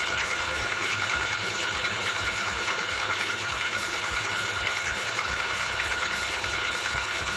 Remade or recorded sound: remade